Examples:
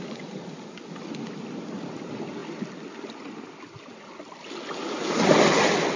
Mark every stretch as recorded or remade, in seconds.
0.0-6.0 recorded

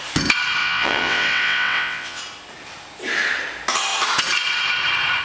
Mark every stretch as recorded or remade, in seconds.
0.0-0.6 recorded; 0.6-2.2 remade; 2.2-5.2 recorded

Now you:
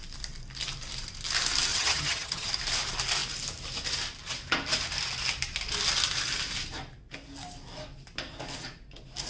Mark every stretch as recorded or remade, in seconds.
0.0-1.7 recorded; 1.7-2.5 remade; 2.5-9.3 recorded

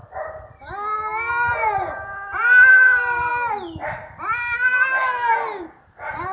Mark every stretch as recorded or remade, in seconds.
0.0-0.7 remade; 0.7-1.5 recorded; 1.5-3.3 remade; 3.3-6.3 recorded

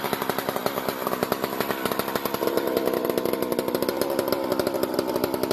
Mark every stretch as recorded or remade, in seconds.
0.0-5.5 recorded

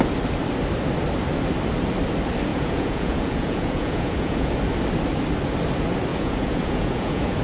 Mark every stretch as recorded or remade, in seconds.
0.0-2.5 recorded; 2.5-4.5 remade; 4.5-6.1 recorded; 6.1-7.4 remade